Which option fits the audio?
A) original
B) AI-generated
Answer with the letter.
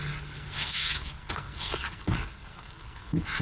B